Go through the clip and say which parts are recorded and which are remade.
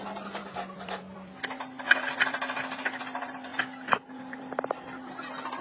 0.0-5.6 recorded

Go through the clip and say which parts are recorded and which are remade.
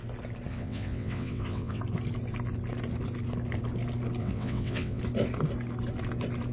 0.0-0.5 recorded; 0.5-1.8 remade; 1.8-4.2 recorded; 4.2-5.0 remade; 5.0-6.5 recorded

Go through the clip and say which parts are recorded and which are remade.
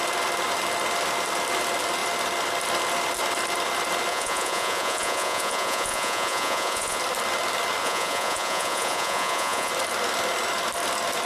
0.0-4.1 recorded; 4.1-7.0 remade; 7.0-7.8 recorded; 7.8-9.7 remade; 9.7-11.3 recorded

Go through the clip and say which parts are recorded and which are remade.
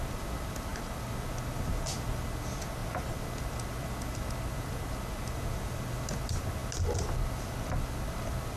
0.0-8.6 recorded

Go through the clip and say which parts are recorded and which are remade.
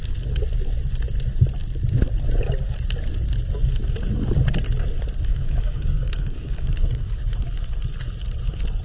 0.0-5.3 recorded; 5.3-7.0 remade; 7.0-8.8 recorded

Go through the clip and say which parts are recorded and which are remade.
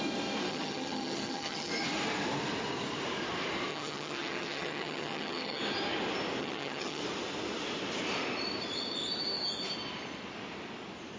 0.0-0.5 recorded; 0.5-1.7 remade; 1.7-3.7 recorded; 3.7-5.6 remade; 5.6-6.4 recorded; 6.4-7.0 remade; 7.0-11.2 recorded